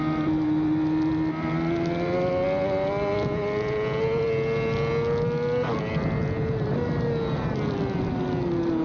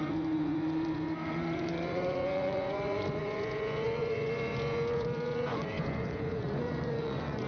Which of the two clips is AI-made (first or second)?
second